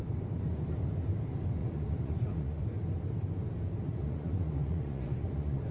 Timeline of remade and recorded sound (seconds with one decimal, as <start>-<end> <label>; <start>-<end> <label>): 0.0-1.6 recorded; 1.6-2.6 remade; 2.6-4.0 recorded; 4.0-5.7 remade